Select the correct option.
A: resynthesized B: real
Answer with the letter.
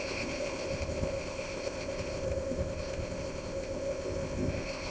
A